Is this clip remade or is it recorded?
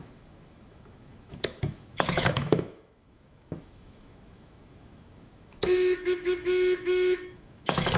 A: remade